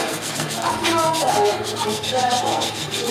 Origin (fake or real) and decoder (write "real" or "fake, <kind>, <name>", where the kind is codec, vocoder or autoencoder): fake, codec, SNAC